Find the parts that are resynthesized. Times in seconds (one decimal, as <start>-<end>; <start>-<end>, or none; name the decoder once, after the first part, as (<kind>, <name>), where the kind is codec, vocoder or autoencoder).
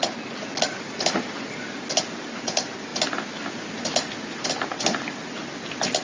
none